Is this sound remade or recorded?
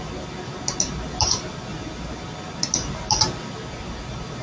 recorded